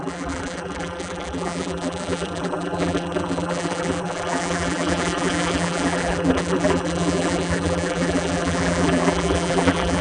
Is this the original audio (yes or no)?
no